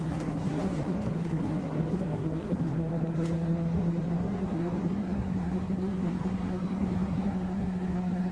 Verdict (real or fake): fake